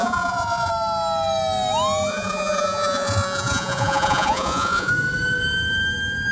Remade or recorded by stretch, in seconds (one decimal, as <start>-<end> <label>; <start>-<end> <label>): 0.0-0.7 remade; 0.7-2.1 recorded; 2.1-4.9 remade; 4.9-6.3 recorded